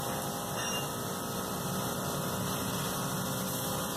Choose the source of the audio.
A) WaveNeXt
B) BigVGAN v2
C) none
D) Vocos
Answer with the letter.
C